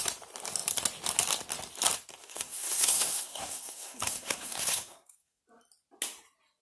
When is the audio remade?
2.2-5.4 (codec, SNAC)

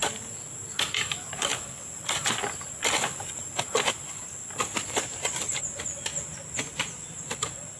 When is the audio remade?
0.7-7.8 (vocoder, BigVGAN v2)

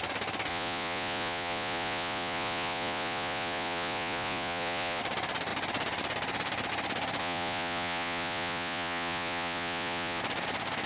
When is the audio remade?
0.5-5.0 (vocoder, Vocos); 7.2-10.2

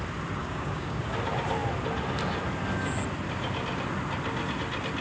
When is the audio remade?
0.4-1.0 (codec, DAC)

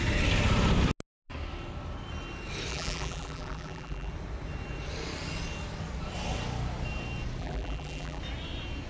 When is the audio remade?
2.7-4.1 (vocoder, BigVGAN v2); 7.4-8.2